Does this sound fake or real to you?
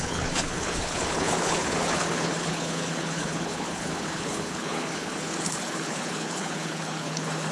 fake